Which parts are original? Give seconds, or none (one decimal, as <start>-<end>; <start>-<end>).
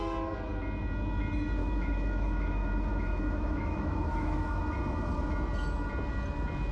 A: 0.0-1.6; 4.6-6.7